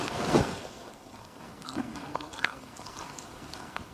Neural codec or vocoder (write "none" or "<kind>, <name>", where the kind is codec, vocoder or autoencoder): codec, SNAC